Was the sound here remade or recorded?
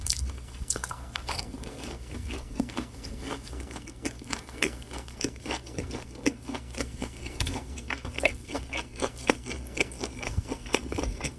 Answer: remade